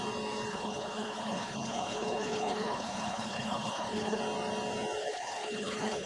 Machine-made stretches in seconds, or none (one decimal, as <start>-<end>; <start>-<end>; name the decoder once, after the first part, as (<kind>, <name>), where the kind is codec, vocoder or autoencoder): 0.5-4.2 (codec, HILCodec); 5.0-6.1